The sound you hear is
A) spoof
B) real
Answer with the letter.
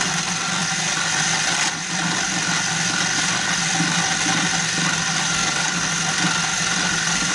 B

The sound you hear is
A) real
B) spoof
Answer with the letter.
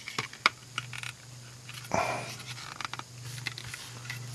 A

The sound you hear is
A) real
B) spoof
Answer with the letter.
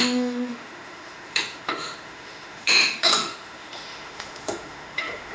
B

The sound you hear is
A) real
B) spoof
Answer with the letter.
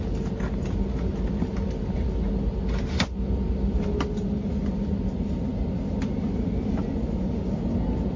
A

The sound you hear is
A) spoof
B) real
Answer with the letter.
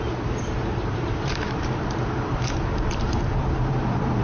A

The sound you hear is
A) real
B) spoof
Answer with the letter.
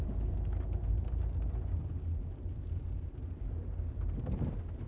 A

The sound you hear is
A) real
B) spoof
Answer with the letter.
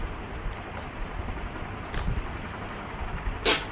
A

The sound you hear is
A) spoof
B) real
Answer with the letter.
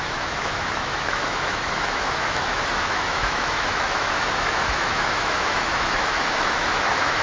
A